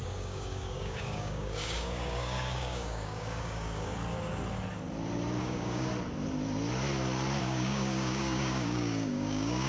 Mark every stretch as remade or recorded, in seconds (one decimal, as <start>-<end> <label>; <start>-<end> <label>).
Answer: 0.0-3.9 remade; 3.9-5.4 recorded; 5.4-5.9 remade; 5.9-7.4 recorded; 7.4-9.7 remade